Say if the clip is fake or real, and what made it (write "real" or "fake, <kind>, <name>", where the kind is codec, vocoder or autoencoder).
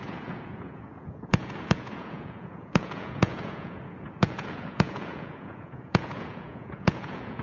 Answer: fake, vocoder, Vocos